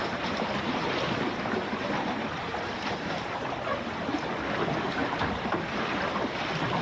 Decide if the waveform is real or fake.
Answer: fake